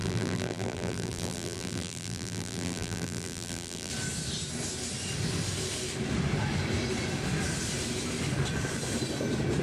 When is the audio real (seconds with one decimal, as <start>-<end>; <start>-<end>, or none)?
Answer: 3.9-9.6